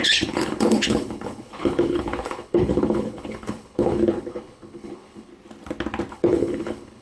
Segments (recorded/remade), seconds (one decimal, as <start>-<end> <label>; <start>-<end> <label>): 0.0-5.3 remade; 5.3-6.1 recorded; 6.1-7.0 remade

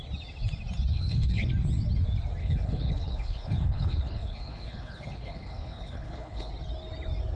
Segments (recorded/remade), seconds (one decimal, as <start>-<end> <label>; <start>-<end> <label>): 0.0-0.9 recorded; 0.9-1.5 remade; 1.5-2.4 recorded; 2.4-6.5 remade; 6.5-7.4 recorded

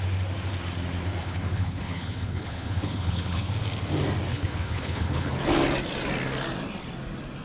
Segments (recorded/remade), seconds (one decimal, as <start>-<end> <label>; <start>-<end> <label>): 0.0-1.2 recorded; 1.2-3.5 remade; 3.5-4.3 recorded; 4.3-5.3 remade; 5.3-7.4 recorded

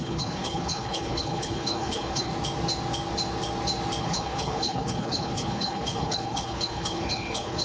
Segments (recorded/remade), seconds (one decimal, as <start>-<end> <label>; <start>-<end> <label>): 0.0-2.3 remade; 2.3-4.0 recorded; 4.0-7.6 remade

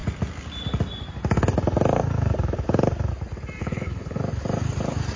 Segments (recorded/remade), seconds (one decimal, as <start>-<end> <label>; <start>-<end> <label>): 0.0-3.6 recorded; 3.6-4.2 remade; 4.2-5.2 recorded